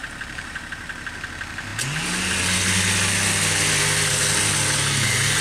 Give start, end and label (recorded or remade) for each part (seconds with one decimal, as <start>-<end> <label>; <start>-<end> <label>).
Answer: 0.0-0.6 remade; 0.6-5.4 recorded